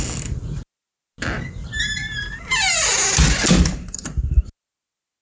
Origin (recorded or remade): recorded